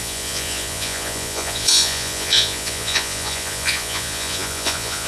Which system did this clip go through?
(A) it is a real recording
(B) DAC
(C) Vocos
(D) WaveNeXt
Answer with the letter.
C